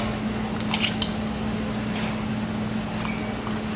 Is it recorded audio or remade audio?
recorded